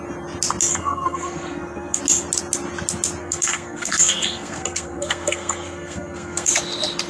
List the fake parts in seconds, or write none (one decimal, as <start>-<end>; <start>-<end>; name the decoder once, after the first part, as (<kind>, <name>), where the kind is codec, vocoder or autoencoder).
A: 0.7-2.0 (codec, SNAC); 3.2-6.5